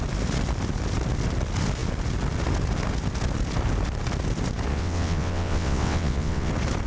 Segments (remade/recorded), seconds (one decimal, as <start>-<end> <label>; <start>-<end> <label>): 0.0-4.7 recorded; 4.7-6.5 remade; 6.5-6.9 recorded